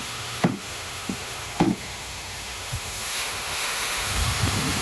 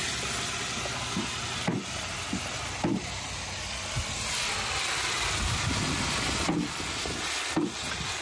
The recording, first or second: second